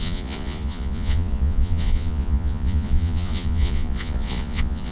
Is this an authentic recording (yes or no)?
no